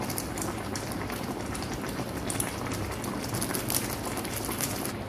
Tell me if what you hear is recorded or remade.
recorded